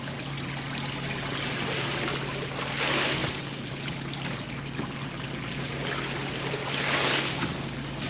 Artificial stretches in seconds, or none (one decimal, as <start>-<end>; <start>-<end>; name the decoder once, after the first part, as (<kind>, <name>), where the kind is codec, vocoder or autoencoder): none